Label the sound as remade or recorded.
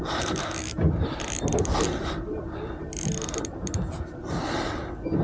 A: recorded